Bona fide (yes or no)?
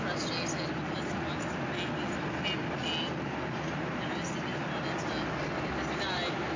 yes